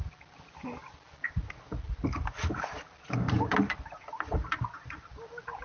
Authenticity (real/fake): real